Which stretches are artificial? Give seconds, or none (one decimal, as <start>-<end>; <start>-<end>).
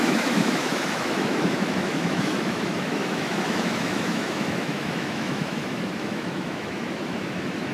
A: 0.0-7.7